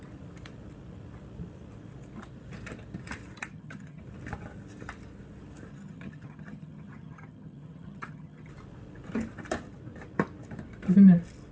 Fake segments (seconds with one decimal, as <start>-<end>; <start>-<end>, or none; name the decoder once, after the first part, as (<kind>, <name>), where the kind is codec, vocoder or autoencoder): 3.5-4.0 (vocoder, HiFi-GAN); 5.7-8.5